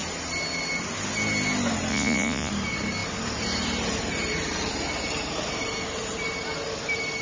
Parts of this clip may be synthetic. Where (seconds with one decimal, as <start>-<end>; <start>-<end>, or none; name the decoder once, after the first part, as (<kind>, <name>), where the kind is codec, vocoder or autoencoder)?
1.9-2.5 (vocoder, Vocos)